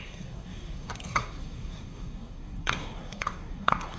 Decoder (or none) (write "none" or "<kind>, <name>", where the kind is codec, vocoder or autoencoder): codec, SNAC